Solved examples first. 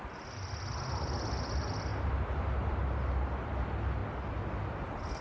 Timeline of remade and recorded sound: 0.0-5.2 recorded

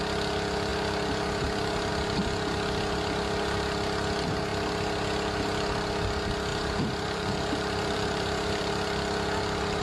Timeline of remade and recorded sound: 0.0-6.5 recorded; 6.5-8.7 remade; 8.7-9.8 recorded

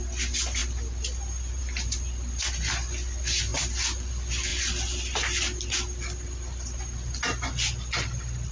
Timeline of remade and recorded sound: 0.0-3.5 recorded; 3.5-4.1 remade; 4.1-4.5 recorded; 4.5-8.5 remade

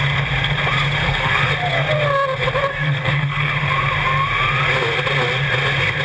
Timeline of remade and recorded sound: 0.0-1.0 recorded; 1.0-1.5 remade; 1.5-2.7 recorded; 2.7-3.5 remade; 3.5-6.0 recorded

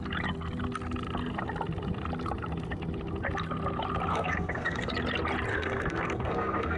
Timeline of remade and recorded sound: 0.0-4.1 recorded; 4.1-4.9 remade; 4.9-5.5 recorded; 5.5-6.8 remade

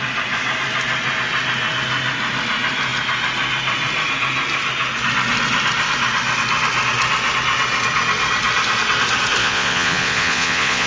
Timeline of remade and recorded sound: 0.0-9.4 recorded; 9.4-10.9 remade

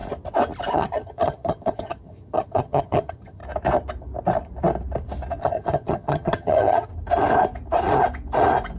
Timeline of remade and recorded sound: 0.0-0.7 recorded; 0.7-3.4 remade; 3.4-5.4 recorded; 5.4-6.9 remade; 6.9-8.8 recorded